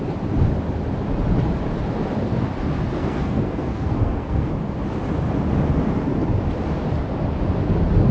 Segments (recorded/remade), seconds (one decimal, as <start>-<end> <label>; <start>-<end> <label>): 0.0-3.0 recorded; 3.0-4.5 remade; 4.5-8.1 recorded